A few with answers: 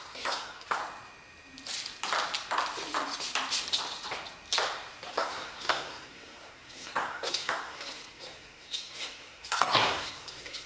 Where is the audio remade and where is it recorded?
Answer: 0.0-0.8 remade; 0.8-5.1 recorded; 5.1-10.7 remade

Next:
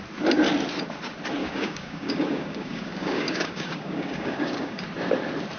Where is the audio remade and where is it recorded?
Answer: 0.0-1.4 recorded; 1.4-4.8 remade; 4.8-5.6 recorded

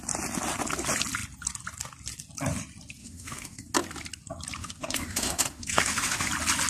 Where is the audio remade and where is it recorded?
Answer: 0.0-3.0 recorded; 3.0-3.6 remade; 3.6-4.6 recorded; 4.6-6.3 remade; 6.3-6.7 recorded

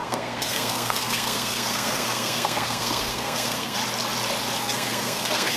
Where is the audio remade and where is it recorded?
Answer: 0.0-3.8 remade; 3.8-4.6 recorded; 4.6-5.6 remade

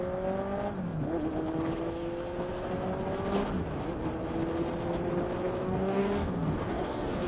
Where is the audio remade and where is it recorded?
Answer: 0.0-5.6 recorded; 5.6-7.3 remade

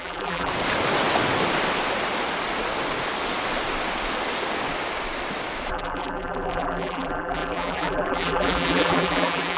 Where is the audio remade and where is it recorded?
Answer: 0.0-0.5 remade; 0.5-5.7 recorded; 5.7-9.6 remade

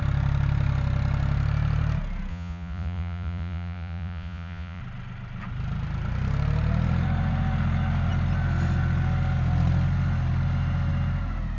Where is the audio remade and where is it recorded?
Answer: 0.0-2.3 recorded; 2.3-4.8 remade; 4.8-11.6 recorded